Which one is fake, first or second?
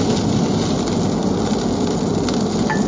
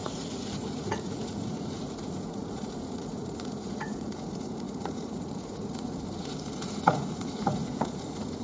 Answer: second